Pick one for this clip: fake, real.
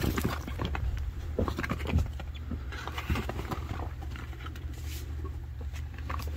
fake